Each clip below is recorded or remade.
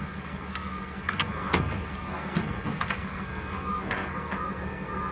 remade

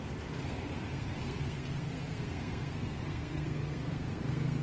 remade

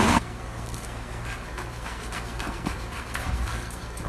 remade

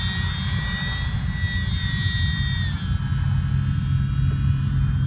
recorded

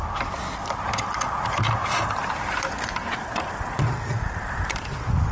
recorded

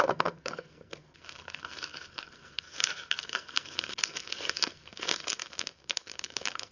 remade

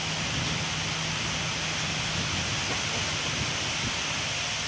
recorded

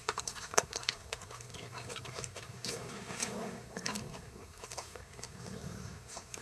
remade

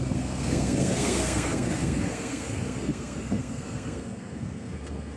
remade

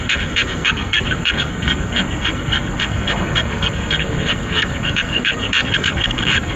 remade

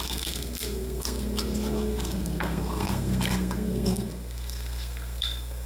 remade